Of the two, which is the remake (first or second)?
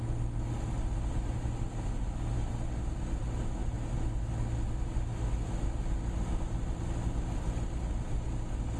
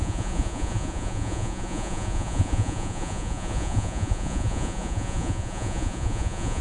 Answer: second